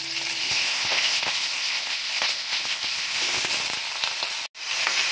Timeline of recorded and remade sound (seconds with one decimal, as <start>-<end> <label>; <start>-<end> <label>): 0.0-0.4 recorded; 0.4-3.5 remade; 3.5-5.1 recorded